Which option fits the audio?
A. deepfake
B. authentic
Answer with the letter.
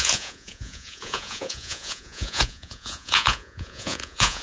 A